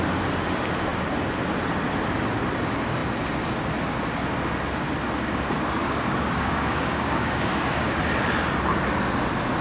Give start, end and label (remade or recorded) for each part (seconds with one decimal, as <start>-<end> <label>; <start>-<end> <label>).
0.0-5.8 recorded; 5.8-8.0 remade; 8.0-9.6 recorded